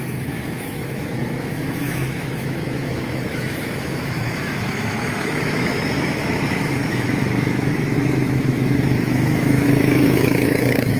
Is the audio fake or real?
fake